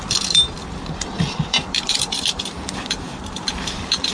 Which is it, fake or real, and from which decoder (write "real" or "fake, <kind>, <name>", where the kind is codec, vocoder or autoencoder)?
fake, vocoder, BigVGAN v2